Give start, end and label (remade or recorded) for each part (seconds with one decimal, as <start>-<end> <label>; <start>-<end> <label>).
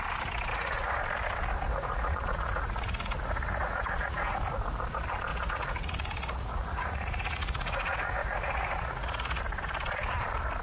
0.0-0.5 recorded; 0.5-1.0 remade; 1.0-1.7 recorded; 1.7-4.4 remade; 4.4-5.3 recorded; 5.3-9.4 remade; 9.4-10.6 recorded